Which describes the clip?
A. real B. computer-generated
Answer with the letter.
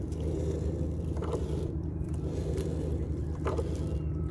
B